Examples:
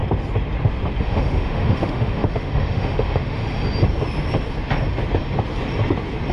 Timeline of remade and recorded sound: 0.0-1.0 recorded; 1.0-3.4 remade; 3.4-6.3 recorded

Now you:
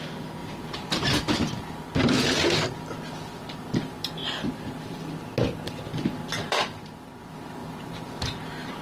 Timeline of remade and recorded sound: 0.0-0.4 recorded; 0.4-1.5 remade; 1.5-5.9 recorded; 5.9-7.1 remade; 7.1-7.6 recorded; 7.6-8.8 remade

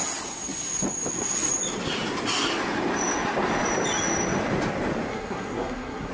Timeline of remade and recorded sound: 0.0-5.1 recorded; 5.1-6.1 remade

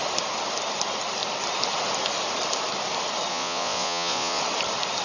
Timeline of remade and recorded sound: 0.0-3.3 recorded; 3.3-4.4 remade; 4.4-5.0 recorded

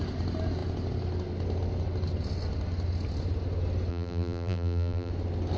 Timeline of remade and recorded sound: 0.0-3.9 recorded; 3.9-5.1 remade; 5.1-5.6 recorded